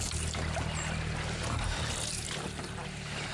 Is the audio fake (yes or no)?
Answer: no